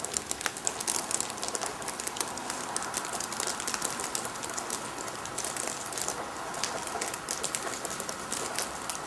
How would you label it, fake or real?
real